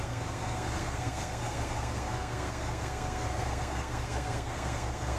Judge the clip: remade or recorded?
remade